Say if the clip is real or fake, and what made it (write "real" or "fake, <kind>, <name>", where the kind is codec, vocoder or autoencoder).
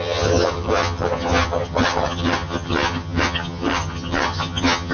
fake, vocoder, HiFi-GAN